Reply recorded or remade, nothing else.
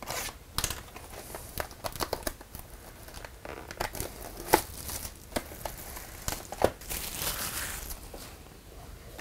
recorded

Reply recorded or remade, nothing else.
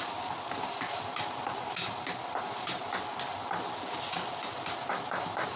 recorded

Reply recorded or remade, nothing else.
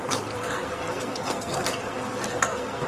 remade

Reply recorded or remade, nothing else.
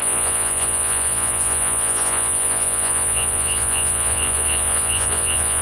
remade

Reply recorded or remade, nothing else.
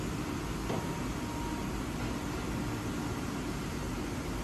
recorded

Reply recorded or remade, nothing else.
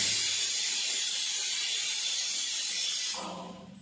remade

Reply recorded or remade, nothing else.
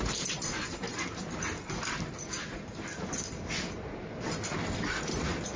recorded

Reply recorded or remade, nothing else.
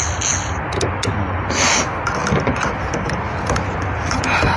recorded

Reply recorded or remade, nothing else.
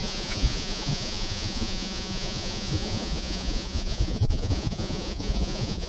remade